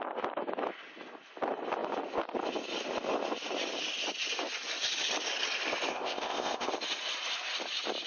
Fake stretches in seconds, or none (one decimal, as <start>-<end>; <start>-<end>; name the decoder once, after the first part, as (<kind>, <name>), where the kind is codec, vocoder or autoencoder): 5.9-6.7 (codec, ZipCodec)